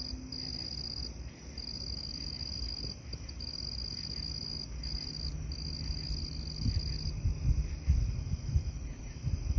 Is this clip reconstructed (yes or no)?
no